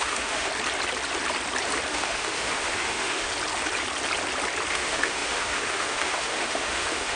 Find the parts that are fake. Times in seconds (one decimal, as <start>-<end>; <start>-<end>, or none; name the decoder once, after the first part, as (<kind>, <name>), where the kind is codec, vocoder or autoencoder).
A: 0.0-0.5 (autoencoder, DAC-VAE); 1.9-3.3; 4.7-7.2